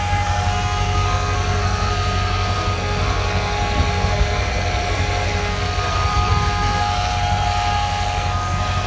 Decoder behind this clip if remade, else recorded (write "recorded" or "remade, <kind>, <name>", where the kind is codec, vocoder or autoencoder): remade, codec, SNAC